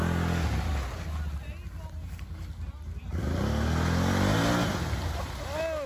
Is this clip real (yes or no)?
yes